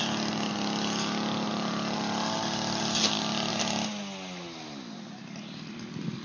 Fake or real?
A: real